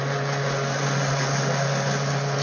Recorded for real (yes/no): yes